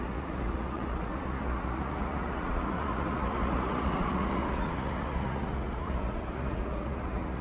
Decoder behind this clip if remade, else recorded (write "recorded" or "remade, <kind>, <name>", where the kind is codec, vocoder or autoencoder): remade, vocoder, Vocos